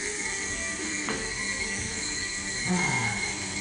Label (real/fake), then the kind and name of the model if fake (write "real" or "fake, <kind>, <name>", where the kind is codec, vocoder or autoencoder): fake, codec, SNAC